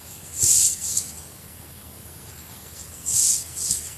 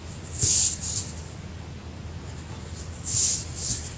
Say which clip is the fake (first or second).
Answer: first